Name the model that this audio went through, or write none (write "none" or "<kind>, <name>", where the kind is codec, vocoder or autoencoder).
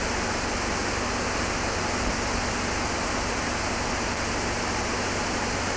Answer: none